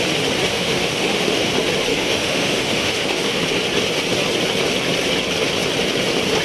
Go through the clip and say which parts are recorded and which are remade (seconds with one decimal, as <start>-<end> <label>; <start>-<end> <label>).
0.0-0.5 recorded; 0.5-1.5 remade; 1.5-1.9 recorded; 1.9-3.4 remade; 3.4-6.4 recorded